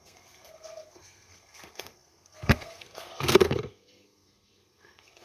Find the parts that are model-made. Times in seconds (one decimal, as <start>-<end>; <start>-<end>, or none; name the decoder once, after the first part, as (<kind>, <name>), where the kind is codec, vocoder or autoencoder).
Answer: 0.0-5.2 (codec, SNAC)